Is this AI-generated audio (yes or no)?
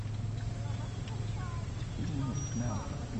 no